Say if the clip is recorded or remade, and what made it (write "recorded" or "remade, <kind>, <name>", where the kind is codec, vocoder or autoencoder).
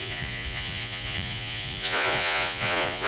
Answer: remade, vocoder, Vocos